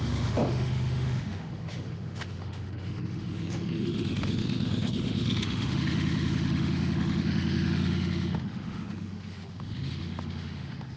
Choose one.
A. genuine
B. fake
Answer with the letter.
B